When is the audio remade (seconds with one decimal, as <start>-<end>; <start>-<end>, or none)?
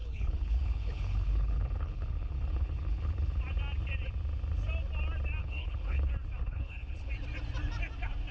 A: 0.0-3.4; 5.4-6.1; 6.5-7.1